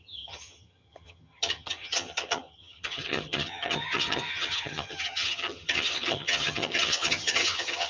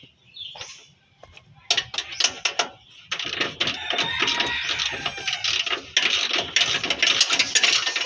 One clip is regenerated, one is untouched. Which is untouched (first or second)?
second